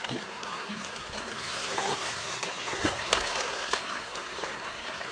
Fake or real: fake